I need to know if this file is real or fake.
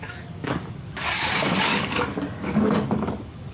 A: fake